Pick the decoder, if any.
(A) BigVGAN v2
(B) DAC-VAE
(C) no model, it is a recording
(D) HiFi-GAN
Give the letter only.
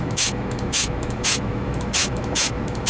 B